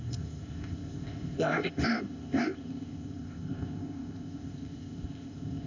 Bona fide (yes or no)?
no